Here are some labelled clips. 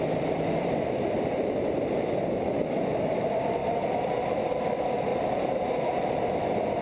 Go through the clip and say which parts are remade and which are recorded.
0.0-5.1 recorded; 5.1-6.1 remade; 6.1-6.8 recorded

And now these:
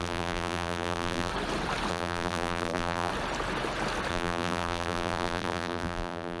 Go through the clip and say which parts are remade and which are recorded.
0.0-1.3 remade; 1.3-1.9 recorded; 1.9-3.1 remade; 3.1-4.1 recorded; 4.1-6.4 remade

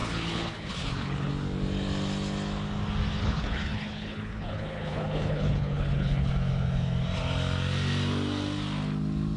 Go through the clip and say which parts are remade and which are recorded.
0.0-1.3 remade; 1.3-3.2 recorded; 3.2-6.3 remade; 6.3-9.4 recorded

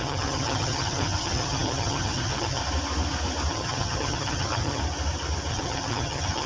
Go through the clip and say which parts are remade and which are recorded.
0.0-2.6 remade; 2.6-3.5 recorded; 3.5-4.8 remade; 4.8-5.5 recorded; 5.5-6.5 remade

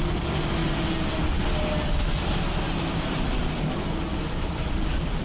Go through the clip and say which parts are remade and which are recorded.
0.0-5.2 recorded

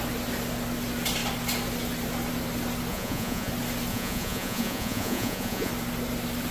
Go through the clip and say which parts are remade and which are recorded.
0.0-2.9 recorded; 2.9-3.5 remade; 3.5-3.9 recorded; 3.9-5.7 remade; 5.7-6.5 recorded